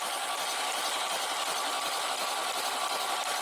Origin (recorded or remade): recorded